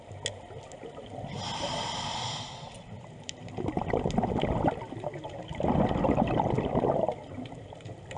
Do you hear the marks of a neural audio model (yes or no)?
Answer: no